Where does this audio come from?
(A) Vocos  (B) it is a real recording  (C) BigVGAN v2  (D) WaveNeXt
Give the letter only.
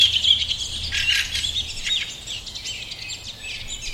B